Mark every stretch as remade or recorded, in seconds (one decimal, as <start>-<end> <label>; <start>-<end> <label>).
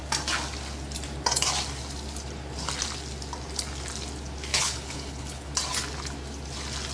0.0-4.5 recorded; 4.5-5.5 remade; 5.5-6.9 recorded